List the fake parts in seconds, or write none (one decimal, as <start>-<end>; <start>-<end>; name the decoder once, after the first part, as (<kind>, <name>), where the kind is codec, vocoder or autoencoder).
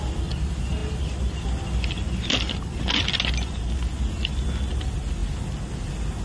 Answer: none